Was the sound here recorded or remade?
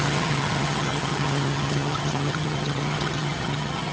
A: remade